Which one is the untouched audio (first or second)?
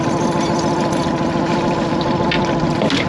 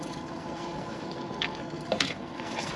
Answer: first